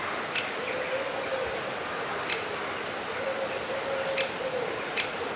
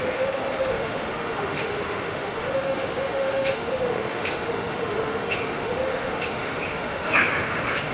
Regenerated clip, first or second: second